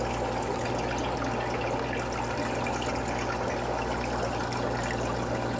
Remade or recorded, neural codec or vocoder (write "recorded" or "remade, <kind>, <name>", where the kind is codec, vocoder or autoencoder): recorded